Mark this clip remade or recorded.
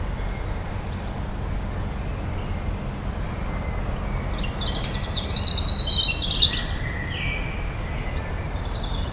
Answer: recorded